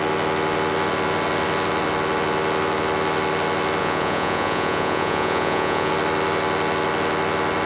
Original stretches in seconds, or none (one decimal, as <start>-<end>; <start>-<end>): 0.0-3.8; 5.9-7.7

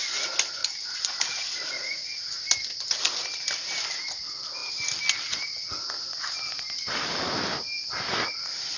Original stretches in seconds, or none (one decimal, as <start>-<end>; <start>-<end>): 0.0-0.6; 2.3-8.8

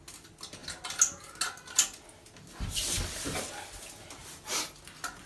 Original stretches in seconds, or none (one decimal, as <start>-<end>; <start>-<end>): 0.0-4.2; 4.8-5.3

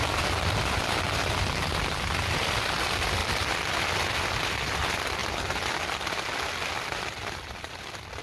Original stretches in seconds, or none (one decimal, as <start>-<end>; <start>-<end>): 3.2-4.2; 5.2-8.2

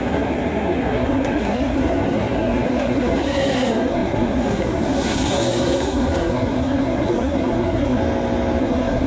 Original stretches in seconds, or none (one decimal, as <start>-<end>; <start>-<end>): 8.0-8.6

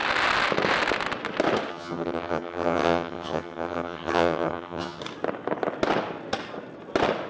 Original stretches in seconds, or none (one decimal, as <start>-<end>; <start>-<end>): 0.0-1.7; 5.0-7.3